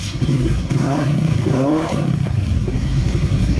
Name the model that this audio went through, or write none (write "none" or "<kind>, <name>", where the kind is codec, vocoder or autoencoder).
codec, SNAC